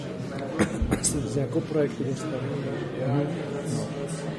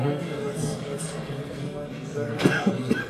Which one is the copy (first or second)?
second